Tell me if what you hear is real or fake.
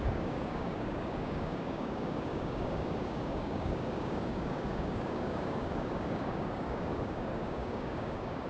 fake